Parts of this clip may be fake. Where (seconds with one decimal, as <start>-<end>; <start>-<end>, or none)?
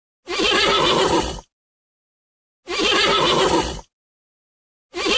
none